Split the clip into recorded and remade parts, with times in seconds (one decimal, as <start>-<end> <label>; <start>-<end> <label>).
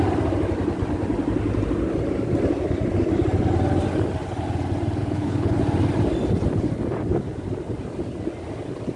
0.0-5.0 recorded; 5.0-5.6 remade; 5.6-9.0 recorded